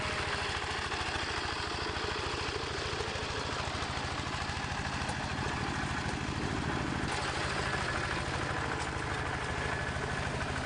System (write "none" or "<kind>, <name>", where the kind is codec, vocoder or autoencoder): none